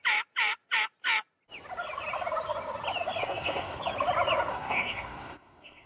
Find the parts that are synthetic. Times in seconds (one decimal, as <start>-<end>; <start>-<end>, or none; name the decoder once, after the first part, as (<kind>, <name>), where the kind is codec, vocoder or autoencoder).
3.2-3.8 (codec, SNAC); 4.5-5.9